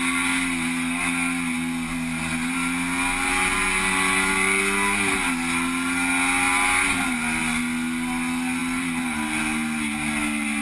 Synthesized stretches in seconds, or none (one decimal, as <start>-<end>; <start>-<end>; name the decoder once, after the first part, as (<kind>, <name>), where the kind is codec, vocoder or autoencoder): none

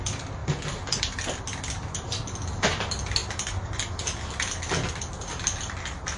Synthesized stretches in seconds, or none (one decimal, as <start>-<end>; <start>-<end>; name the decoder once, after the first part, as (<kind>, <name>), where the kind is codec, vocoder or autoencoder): none

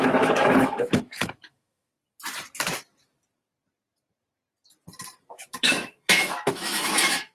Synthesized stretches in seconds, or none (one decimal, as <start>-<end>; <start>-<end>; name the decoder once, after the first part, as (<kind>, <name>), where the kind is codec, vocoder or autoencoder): 0.0-1.9 (autoencoder, DAC-VAE); 5.3-7.3

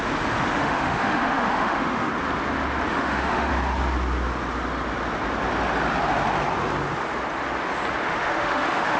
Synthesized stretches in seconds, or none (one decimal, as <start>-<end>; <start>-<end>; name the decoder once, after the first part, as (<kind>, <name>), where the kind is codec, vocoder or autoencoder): 0.6-2.1 (autoencoder, DAC-VAE); 2.9-3.5; 8.0-9.0